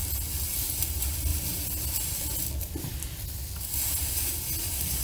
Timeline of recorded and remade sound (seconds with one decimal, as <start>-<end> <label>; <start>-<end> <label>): 0.0-5.0 recorded